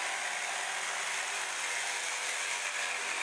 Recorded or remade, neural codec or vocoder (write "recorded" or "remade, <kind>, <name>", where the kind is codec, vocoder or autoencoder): recorded